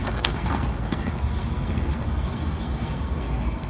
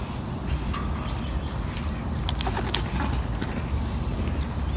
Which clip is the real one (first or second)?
second